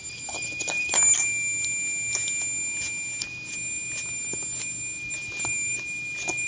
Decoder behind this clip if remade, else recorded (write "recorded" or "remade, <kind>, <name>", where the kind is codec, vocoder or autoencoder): recorded